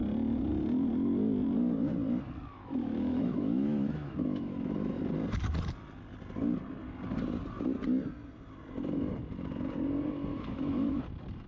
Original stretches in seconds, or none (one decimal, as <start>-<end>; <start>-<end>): 0.0-2.5; 5.0-10.3; 11.0-11.5

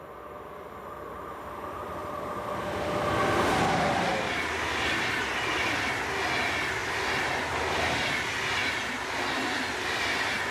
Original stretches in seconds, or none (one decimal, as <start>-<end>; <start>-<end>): 0.0-10.5

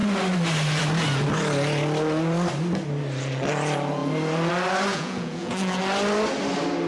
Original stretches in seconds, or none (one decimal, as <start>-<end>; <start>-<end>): 0.0-4.9; 5.8-6.9

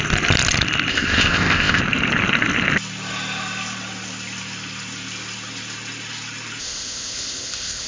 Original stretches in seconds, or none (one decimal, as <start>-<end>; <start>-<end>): 0.0-0.9; 1.8-6.6

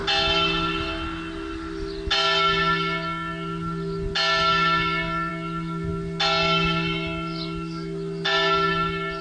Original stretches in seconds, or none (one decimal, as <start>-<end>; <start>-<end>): 0.0-9.2

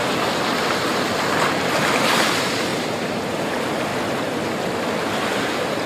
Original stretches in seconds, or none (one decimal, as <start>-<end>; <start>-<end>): 0.0-2.7; 3.4-5.9

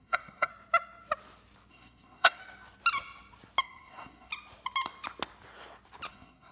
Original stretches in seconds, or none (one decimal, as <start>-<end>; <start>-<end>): 0.5-1.7; 2.4-3.6; 4.3-6.1

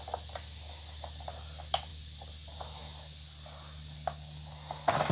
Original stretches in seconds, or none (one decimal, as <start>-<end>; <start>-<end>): 0.0-5.1